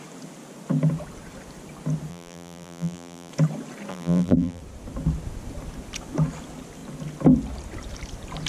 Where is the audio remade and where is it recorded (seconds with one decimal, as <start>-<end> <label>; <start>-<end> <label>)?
0.0-2.1 recorded; 2.1-3.3 remade; 3.3-3.9 recorded; 3.9-4.6 remade; 4.6-8.5 recorded

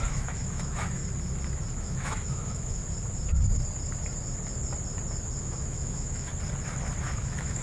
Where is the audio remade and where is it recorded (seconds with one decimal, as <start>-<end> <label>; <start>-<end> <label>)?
0.0-1.0 remade; 1.0-1.8 recorded; 1.8-2.8 remade; 2.8-5.4 recorded; 5.4-6.3 remade; 6.3-7.0 recorded; 7.0-7.6 remade

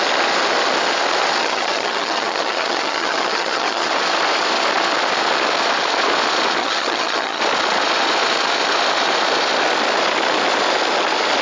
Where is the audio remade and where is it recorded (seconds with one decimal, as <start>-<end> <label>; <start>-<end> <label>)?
0.0-1.4 recorded; 1.4-3.9 remade; 3.9-6.6 recorded; 6.6-7.4 remade; 7.4-11.4 recorded

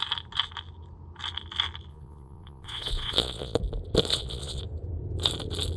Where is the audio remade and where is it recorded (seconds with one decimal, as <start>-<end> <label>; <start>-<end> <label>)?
0.0-1.9 recorded; 1.9-3.6 remade; 3.6-4.1 recorded; 4.1-4.6 remade; 4.6-5.8 recorded

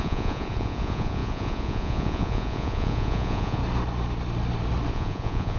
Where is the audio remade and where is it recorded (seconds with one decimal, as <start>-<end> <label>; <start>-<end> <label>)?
0.0-3.6 remade; 3.6-4.9 recorded; 4.9-5.6 remade

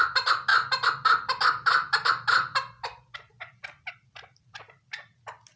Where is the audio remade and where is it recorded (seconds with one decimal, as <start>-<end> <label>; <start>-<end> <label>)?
0.0-5.6 recorded

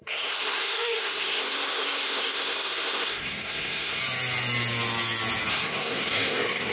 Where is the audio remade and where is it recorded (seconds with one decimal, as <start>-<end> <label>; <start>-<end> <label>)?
0.0-4.0 remade; 4.0-5.5 recorded; 5.5-6.7 remade